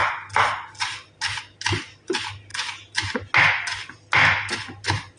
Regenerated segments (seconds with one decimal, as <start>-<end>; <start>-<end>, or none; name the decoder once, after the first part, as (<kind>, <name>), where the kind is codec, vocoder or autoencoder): none